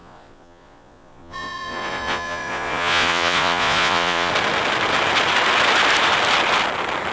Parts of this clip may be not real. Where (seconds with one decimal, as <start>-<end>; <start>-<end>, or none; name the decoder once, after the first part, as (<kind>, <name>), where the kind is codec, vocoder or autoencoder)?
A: 0.0-4.3 (vocoder, Vocos)